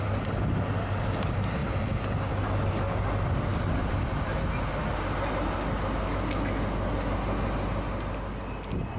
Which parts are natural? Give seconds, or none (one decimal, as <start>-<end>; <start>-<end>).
0.0-9.0